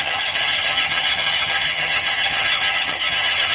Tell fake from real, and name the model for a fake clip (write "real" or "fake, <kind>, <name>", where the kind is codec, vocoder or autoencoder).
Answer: fake, vocoder, HiFi-GAN